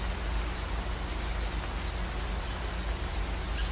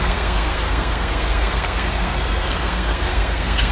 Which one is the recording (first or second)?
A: first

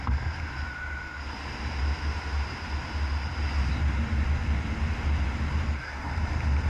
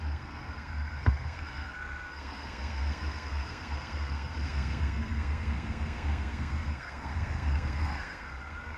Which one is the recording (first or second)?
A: first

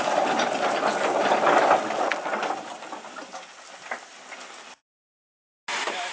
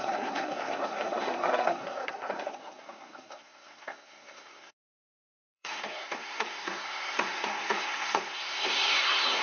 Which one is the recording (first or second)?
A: first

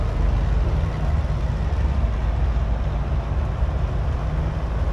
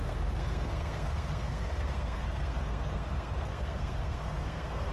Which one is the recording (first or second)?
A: first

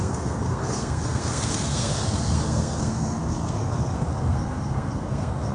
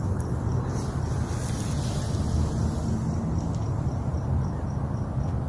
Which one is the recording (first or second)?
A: second